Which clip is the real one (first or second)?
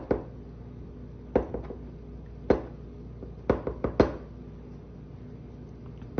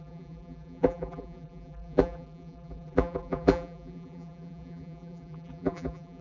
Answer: first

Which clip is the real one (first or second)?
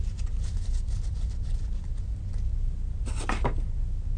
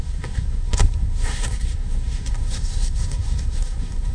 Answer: first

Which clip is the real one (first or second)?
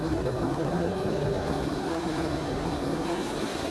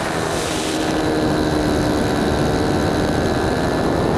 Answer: second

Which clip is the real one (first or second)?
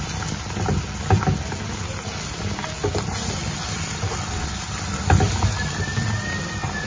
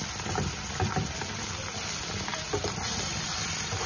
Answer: first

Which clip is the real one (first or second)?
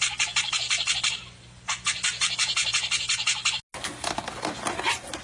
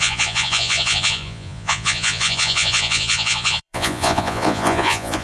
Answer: first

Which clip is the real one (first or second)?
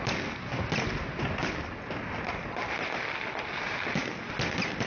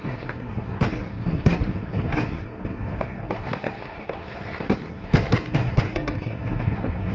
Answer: first